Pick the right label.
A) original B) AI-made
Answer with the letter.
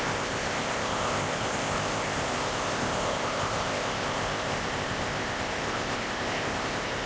B